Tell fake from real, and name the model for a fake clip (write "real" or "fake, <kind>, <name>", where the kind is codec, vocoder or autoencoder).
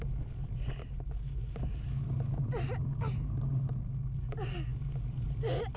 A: real